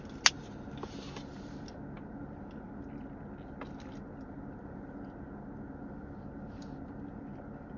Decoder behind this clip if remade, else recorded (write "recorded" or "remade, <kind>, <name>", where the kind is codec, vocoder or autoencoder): recorded